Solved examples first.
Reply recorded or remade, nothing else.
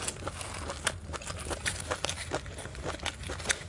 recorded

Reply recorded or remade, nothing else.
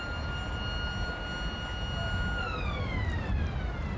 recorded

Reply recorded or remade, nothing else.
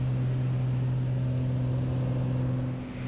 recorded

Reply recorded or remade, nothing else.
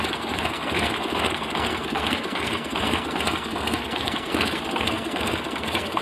remade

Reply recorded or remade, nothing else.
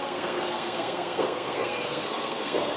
remade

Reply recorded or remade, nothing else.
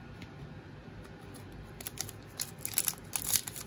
recorded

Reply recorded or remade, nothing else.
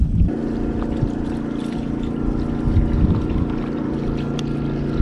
recorded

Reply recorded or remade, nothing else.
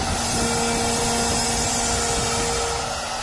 recorded